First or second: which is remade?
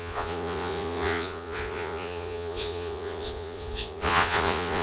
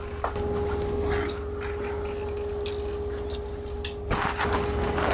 first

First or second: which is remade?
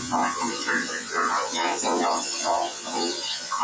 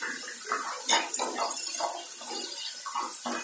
first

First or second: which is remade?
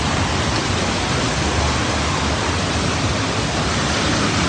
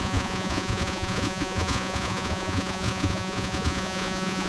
second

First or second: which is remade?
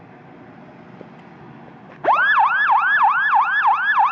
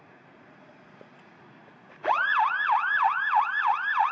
second